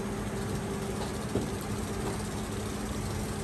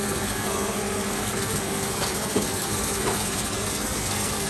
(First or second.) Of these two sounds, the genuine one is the first